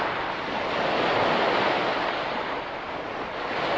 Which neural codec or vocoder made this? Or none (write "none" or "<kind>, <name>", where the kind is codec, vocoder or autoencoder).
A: none